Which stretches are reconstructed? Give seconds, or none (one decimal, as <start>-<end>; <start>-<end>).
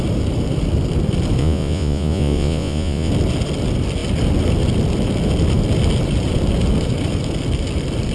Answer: 1.4-3.1